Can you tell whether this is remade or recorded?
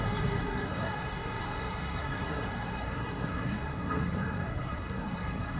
remade